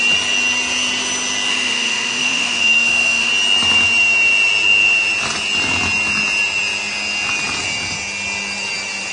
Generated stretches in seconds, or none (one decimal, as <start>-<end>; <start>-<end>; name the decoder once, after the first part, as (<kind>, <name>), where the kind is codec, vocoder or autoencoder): 1.5-3.3 (autoencoder, DAC-VAE)